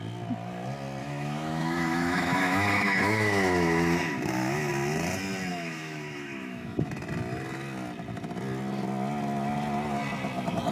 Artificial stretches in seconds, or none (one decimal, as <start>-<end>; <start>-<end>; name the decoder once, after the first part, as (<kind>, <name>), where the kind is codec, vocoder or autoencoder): 1.0-4.7 (autoencoder, DAC-VAE); 5.5-6.9